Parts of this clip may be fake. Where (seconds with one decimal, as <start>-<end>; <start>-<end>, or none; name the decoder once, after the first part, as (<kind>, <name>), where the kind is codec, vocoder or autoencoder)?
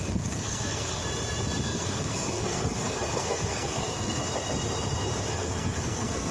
0.0-1.0 (codec, SNAC); 1.6-4.2; 5.3-6.3